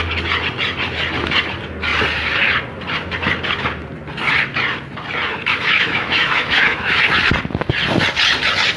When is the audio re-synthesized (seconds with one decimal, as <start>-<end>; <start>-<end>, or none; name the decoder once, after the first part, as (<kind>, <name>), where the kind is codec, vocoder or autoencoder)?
5.5-6.9 (autoencoder, DAC-VAE)